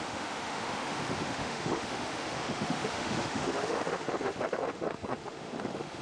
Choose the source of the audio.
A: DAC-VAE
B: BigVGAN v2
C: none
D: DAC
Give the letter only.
A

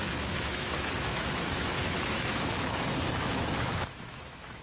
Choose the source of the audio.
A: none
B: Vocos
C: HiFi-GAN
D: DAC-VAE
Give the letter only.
D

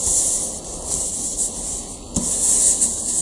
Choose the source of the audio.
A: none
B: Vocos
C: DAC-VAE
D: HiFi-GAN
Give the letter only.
A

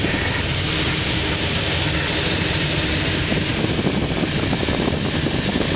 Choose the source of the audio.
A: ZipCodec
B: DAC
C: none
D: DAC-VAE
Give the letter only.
C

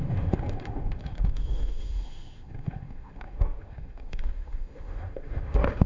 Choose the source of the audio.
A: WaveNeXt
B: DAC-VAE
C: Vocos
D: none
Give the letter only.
B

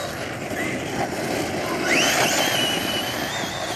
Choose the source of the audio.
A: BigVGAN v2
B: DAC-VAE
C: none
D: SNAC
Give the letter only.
C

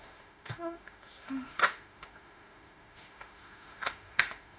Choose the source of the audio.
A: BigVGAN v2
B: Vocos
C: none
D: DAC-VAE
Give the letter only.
D